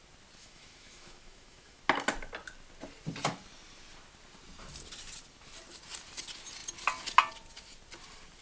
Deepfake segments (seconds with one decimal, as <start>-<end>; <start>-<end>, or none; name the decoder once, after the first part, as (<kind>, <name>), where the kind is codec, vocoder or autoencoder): 0.4-1.8 (autoencoder, DAC-VAE)

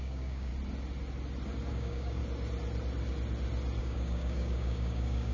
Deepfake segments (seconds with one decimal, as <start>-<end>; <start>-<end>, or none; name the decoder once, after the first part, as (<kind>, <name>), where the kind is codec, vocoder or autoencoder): 0.0-0.5 (codec, DAC); 1.7-2.2; 3.8-5.3

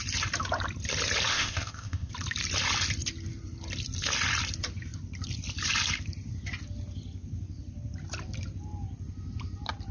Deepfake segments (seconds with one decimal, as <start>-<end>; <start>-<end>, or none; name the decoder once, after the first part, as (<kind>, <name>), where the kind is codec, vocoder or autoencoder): 1.3-2.1 (codec, ZipCodec)

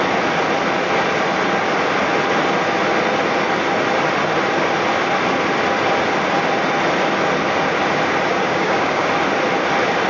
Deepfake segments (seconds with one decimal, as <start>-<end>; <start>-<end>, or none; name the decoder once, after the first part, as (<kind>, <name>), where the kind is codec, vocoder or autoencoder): 8.3-9.1 (codec, DAC)

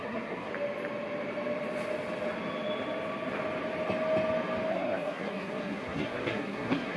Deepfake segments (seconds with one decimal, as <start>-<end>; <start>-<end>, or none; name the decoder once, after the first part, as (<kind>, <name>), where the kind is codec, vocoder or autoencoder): 0.0-0.5 (codec, SNAC); 4.7-7.0

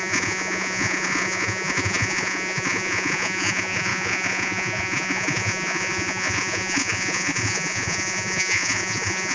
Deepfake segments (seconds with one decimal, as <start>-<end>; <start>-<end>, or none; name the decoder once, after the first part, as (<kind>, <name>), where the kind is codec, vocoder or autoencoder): 0.0-9.3 (vocoder, Vocos)